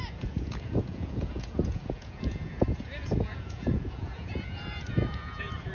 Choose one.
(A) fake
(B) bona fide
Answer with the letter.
A